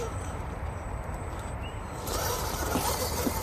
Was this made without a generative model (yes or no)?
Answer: no